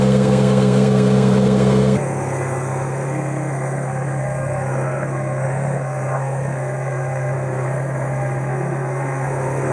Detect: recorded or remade remade